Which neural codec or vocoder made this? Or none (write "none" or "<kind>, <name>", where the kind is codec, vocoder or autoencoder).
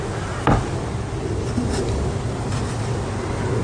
none